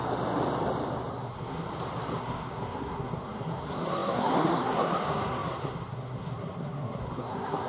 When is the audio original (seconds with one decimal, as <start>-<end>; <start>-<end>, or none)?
0.0-1.1; 1.7-2.2